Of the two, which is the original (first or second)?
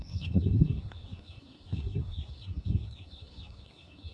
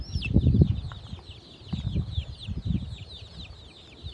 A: second